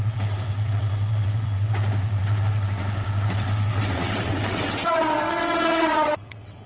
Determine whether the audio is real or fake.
fake